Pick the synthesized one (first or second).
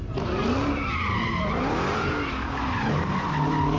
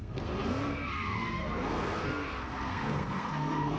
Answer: second